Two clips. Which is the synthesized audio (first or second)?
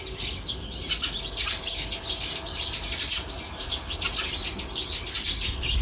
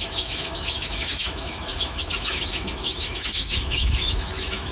second